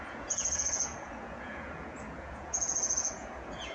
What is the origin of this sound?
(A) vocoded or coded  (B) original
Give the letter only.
A